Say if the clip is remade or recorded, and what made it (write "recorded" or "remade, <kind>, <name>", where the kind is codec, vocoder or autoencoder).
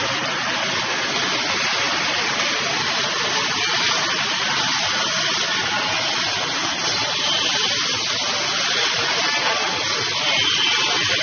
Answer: recorded